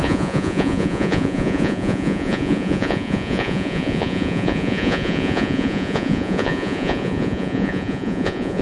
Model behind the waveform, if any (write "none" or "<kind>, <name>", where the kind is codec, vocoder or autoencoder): vocoder, Vocos